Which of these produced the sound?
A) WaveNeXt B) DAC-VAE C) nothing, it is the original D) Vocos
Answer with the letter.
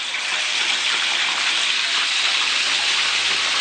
C